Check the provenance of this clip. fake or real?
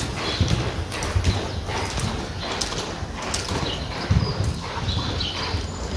real